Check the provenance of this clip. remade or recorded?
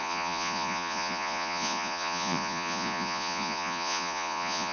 remade